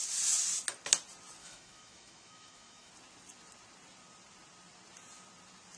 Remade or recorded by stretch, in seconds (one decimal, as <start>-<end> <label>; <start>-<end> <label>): 0.0-1.4 recorded; 1.4-2.9 remade; 2.9-5.8 recorded